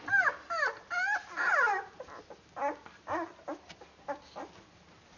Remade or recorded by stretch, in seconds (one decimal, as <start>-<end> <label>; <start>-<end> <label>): 0.0-5.2 recorded